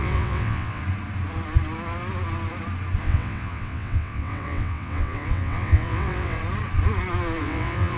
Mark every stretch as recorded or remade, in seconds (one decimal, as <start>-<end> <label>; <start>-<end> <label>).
0.0-0.8 remade; 0.8-3.0 recorded; 3.0-6.4 remade; 6.4-7.4 recorded; 7.4-8.0 remade